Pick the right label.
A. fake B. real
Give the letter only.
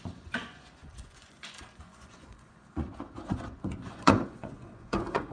A